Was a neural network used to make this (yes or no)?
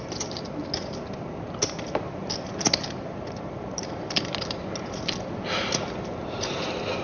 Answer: no